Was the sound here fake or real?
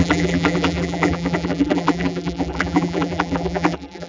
fake